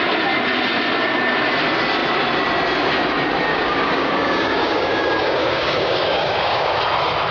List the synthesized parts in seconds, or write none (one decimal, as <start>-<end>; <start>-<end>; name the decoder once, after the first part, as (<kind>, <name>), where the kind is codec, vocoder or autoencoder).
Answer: 3.5-6.7 (codec, DAC)

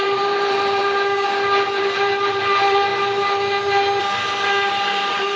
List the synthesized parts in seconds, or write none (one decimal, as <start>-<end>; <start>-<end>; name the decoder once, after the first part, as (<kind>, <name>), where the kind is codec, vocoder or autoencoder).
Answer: 0.0-0.8 (vocoder, BigVGAN v2); 1.8-2.9; 4.8-5.4

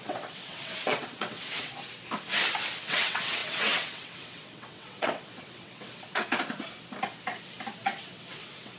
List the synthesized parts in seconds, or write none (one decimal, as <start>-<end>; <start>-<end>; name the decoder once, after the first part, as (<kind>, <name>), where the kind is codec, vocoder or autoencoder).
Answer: 0.0-1.7 (vocoder, WaveNeXt); 2.8-6.3; 7.8-8.8

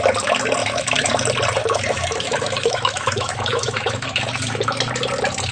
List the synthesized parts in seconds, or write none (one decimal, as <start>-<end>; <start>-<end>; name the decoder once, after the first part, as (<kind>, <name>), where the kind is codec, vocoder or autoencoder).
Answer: 0.6-1.1 (autoencoder, DAC-VAE); 1.6-4.9

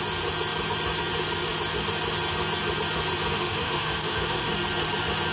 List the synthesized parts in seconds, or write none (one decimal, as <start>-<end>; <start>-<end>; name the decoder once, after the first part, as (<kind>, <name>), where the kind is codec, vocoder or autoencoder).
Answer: 3.3-4.5 (autoencoder, DAC-VAE)